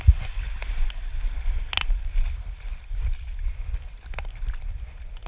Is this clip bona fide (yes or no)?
yes